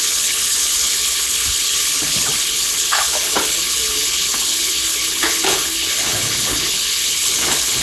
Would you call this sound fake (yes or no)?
yes